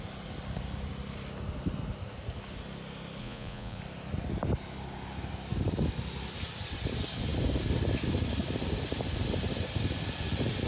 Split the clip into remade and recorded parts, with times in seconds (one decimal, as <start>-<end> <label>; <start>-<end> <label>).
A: 0.0-3.2 recorded; 3.2-3.8 remade; 3.8-10.7 recorded